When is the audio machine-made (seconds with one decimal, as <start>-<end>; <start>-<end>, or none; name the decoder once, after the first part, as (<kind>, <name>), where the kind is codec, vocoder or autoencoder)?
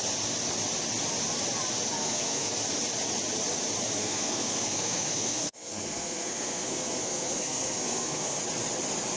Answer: 2.0-2.5 (codec, SNAC); 4.0-8.4